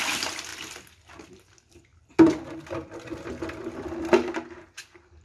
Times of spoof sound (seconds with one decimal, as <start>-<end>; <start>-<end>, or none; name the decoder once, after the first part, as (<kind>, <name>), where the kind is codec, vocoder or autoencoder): none